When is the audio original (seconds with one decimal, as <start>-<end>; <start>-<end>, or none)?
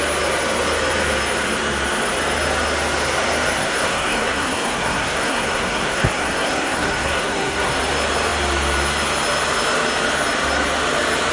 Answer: 0.0-3.6; 7.7-11.3